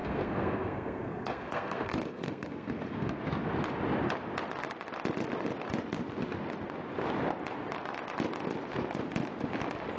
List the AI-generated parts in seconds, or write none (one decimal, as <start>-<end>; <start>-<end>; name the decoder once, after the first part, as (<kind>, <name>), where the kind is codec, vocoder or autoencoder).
0.0-3.2 (codec, SNAC)